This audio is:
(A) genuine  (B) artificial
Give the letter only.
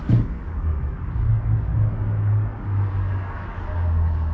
B